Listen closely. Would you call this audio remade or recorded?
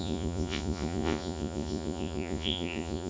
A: remade